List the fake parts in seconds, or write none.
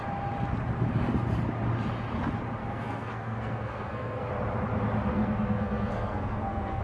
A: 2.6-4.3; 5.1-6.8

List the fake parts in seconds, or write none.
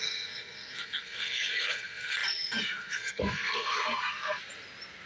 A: 0.0-4.4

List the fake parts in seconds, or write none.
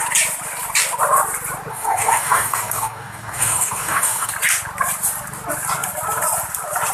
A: 1.7-4.3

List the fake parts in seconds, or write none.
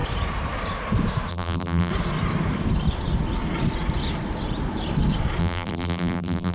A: 1.3-1.9; 5.4-6.5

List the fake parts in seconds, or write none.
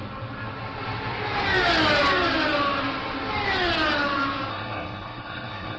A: 4.5-5.8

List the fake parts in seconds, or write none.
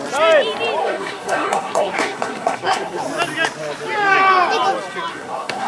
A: 0.8-3.0; 5.1-5.7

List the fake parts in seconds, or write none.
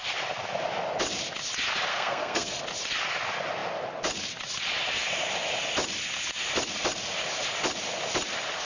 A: 1.9-2.6